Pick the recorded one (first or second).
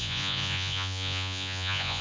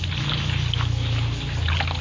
second